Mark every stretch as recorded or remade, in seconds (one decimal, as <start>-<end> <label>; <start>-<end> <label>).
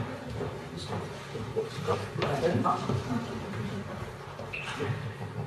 0.0-1.5 recorded; 1.5-4.8 remade; 4.8-5.5 recorded